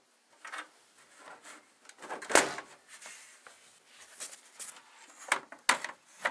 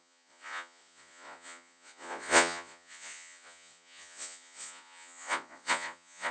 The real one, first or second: first